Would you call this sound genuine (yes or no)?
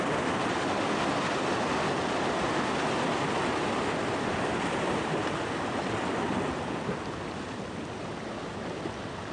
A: yes